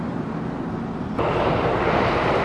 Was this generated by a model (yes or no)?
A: yes